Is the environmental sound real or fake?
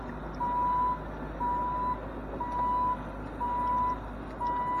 real